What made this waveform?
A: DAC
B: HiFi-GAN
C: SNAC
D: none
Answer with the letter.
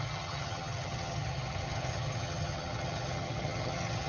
B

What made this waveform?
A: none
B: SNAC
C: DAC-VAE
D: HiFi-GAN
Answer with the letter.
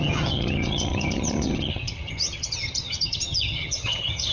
D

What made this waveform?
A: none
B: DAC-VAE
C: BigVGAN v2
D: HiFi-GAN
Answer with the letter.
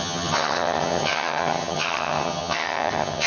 D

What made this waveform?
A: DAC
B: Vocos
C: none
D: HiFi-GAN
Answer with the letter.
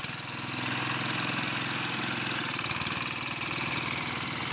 C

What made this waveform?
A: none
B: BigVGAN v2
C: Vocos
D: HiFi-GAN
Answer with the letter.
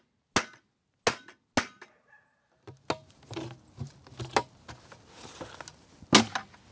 A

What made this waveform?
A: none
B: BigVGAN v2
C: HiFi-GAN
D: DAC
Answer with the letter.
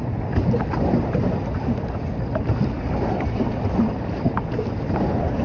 A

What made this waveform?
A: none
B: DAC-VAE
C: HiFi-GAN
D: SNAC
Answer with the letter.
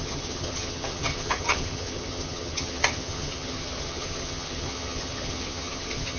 C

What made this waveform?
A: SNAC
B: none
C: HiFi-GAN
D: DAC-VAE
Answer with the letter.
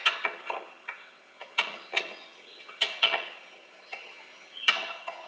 C